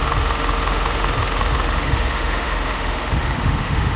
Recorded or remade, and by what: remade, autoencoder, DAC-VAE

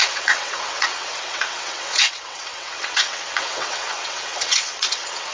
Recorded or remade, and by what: remade, vocoder, WaveNeXt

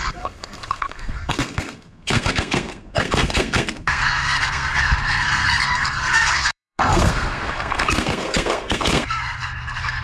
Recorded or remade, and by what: remade, codec, SNAC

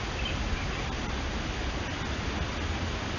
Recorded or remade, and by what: recorded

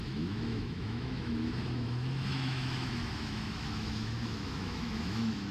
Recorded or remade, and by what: remade, autoencoder, DAC-VAE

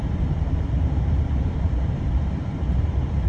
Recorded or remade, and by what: remade, vocoder, BigVGAN v2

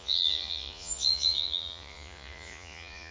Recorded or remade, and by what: remade, vocoder, Vocos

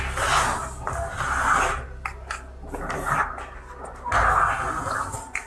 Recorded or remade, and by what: recorded